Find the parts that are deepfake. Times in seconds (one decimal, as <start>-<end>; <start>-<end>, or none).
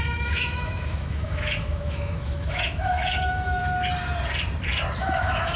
0.0-3.6; 5.0-5.6